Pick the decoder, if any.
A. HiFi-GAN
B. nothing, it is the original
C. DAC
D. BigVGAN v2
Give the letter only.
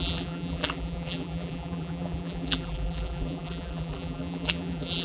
D